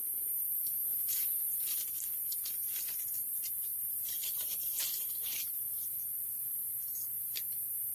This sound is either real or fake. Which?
real